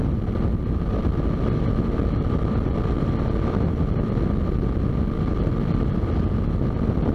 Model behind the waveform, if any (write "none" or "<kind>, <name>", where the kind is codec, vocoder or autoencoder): none